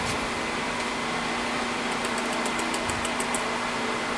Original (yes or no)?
yes